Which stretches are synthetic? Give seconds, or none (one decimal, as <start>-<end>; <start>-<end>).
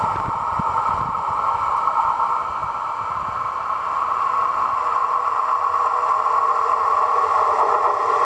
none